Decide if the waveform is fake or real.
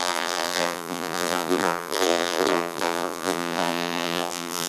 fake